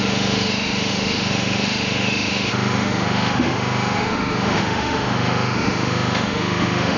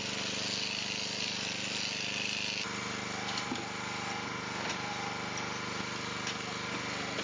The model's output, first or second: first